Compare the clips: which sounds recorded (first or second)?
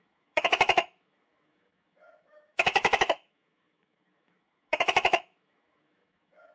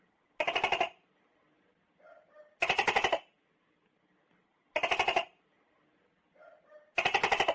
second